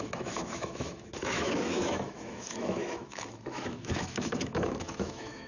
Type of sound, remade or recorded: remade